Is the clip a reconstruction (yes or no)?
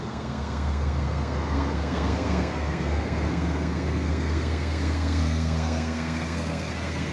yes